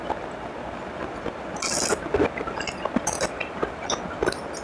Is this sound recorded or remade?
recorded